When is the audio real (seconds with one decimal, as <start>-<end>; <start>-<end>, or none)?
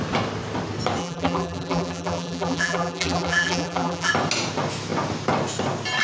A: 0.0-1.0; 4.1-6.0